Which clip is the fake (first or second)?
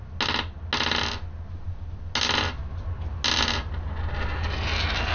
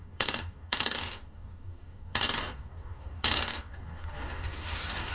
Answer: second